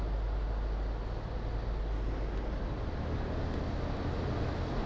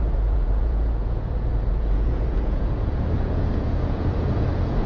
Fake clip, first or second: second